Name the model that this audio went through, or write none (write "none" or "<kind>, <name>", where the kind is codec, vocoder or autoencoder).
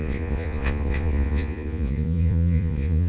vocoder, Vocos